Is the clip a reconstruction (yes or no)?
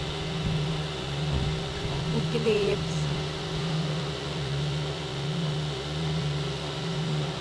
yes